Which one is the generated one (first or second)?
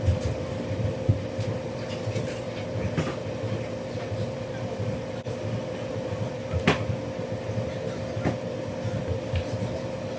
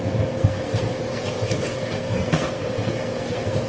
second